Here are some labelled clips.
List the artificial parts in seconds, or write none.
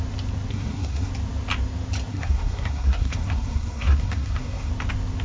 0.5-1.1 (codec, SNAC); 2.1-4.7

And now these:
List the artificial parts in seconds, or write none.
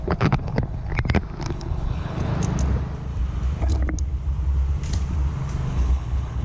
0.0-0.9 (codec, HILCodec); 1.5-2.3; 5.7-6.4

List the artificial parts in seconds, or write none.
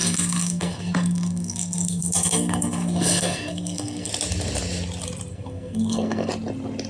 0.0-4.1 (codec, SNAC); 5.3-6.3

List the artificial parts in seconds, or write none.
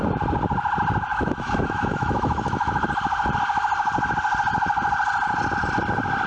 1.1-2.9 (autoencoder, DAC-VAE)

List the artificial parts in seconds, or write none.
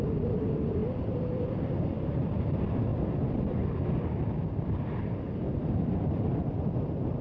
none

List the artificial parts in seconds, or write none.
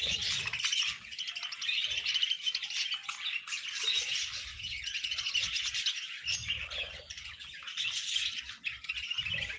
4.5-5.3 (vocoder, Vocos)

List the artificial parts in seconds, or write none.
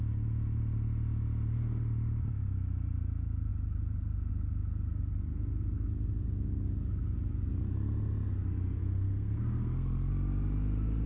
8.8-10.1 (codec, SNAC)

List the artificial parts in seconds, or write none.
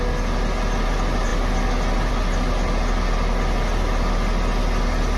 none